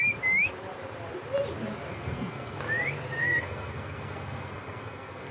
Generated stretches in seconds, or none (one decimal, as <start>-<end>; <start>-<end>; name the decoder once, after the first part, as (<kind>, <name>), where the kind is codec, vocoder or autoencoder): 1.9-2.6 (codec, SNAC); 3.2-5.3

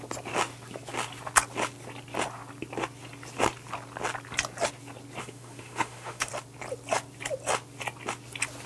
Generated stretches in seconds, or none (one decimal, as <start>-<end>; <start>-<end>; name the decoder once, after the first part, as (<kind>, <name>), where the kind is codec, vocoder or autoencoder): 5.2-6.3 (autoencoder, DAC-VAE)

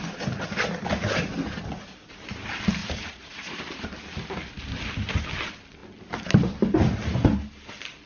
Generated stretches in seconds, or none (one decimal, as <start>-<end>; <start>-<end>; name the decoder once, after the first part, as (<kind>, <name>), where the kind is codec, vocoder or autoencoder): 2.8-3.6 (vocoder, Vocos)